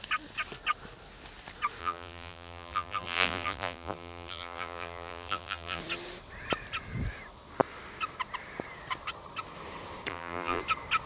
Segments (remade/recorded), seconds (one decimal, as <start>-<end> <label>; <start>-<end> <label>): 0.0-1.8 recorded; 1.8-5.8 remade; 5.8-10.1 recorded; 10.1-10.6 remade; 10.6-11.1 recorded